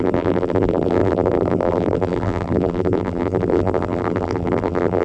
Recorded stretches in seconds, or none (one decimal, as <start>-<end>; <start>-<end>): none